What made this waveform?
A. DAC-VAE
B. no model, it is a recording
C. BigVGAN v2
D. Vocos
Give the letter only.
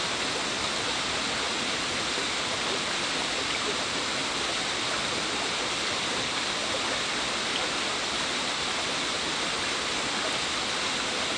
B